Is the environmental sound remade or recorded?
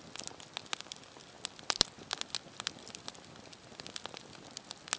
recorded